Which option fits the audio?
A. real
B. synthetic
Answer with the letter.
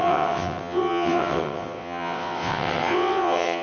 B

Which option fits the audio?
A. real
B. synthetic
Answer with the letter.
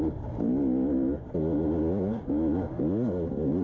A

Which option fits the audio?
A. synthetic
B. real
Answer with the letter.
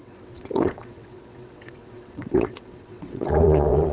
A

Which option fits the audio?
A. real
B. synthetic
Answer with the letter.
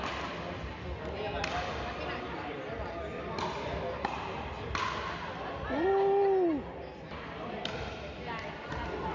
A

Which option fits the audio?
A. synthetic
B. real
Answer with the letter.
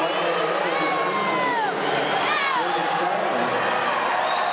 B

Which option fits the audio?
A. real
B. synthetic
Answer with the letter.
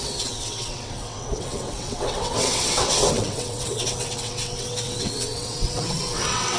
B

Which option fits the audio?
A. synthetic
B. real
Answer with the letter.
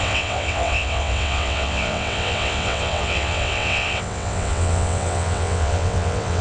A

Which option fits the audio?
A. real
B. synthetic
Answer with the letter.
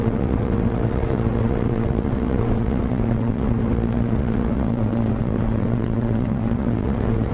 B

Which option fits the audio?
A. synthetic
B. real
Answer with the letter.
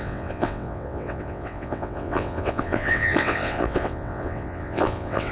A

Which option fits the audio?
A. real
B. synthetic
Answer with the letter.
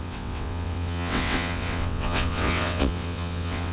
B